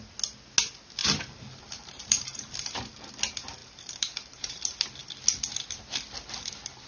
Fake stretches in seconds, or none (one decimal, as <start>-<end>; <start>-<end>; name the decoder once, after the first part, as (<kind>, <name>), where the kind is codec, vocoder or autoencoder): 1.0-3.1 (vocoder, BigVGAN v2); 3.6-4.6